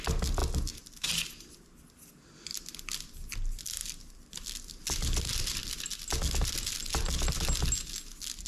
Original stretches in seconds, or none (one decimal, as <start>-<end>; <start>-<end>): 0.0-8.5